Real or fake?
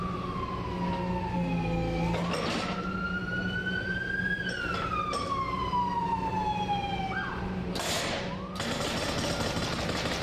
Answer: real